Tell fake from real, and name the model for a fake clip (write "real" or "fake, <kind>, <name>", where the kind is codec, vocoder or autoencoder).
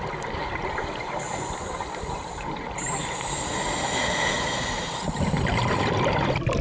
fake, vocoder, BigVGAN v2